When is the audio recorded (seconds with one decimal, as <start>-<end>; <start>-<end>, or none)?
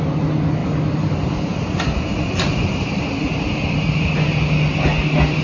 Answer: 0.0-5.4